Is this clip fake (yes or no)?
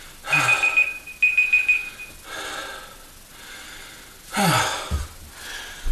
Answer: no